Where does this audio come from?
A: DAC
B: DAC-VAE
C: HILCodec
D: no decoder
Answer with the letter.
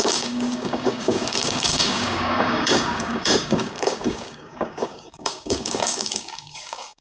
A